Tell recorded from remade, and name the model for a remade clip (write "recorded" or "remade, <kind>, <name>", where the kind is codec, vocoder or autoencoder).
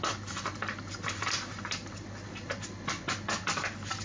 recorded